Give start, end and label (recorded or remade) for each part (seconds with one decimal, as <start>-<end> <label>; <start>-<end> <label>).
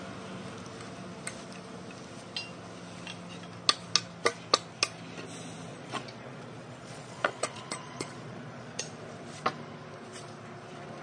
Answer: 0.0-5.7 recorded; 5.7-8.8 remade; 8.8-11.0 recorded